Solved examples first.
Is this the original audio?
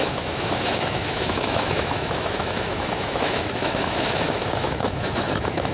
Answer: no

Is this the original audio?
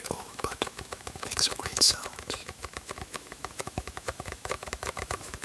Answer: no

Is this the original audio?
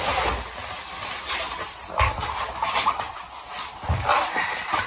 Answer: yes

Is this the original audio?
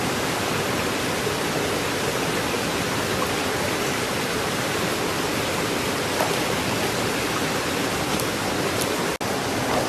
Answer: yes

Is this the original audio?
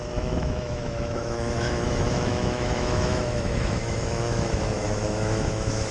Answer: no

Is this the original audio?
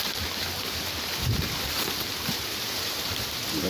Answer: yes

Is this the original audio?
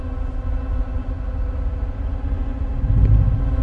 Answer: yes